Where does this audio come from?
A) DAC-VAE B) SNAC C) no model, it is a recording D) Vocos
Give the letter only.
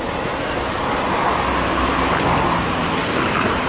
C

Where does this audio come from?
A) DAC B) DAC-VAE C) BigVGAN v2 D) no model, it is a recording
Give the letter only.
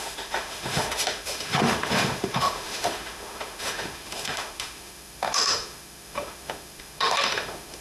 B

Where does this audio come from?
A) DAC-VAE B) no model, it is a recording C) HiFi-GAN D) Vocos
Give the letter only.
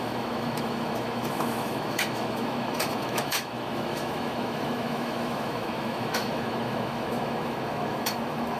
A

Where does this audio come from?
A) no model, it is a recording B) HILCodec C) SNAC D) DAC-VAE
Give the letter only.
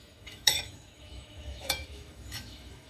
D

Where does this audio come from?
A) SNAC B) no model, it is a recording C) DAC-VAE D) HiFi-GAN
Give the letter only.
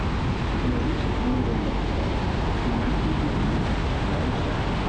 B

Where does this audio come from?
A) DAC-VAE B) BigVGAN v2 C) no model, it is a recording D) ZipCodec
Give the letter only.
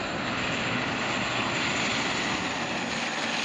C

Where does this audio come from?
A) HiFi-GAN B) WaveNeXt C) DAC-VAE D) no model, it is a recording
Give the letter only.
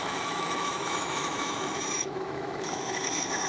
C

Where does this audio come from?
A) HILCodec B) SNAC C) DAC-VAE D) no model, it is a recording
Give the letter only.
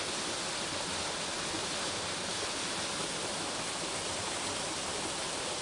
D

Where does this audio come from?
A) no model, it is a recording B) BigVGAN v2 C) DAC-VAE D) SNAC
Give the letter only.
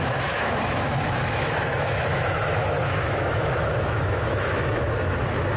C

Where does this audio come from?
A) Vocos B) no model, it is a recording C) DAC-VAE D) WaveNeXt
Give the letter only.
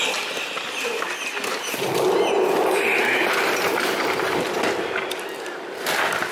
B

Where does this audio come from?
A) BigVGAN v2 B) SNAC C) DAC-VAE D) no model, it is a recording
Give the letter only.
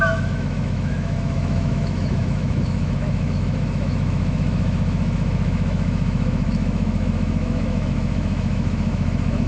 C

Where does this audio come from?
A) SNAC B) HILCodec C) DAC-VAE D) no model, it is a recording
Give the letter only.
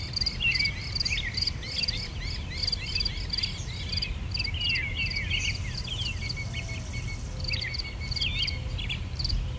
D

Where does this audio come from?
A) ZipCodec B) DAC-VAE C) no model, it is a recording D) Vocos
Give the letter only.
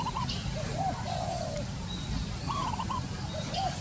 C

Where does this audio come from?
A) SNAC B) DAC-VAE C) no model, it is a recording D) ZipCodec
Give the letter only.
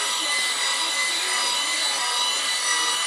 C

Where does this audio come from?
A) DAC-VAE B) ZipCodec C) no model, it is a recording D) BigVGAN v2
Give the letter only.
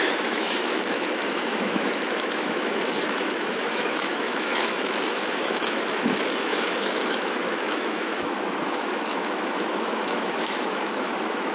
A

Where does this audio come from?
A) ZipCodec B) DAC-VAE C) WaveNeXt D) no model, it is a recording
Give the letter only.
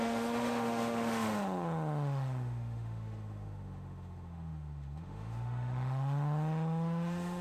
B